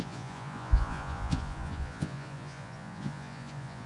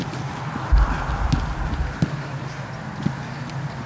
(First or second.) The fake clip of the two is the first